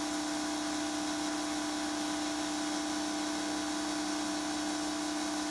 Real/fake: real